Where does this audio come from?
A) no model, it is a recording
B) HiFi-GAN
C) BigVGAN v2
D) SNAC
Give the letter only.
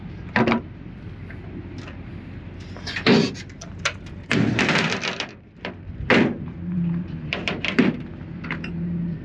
C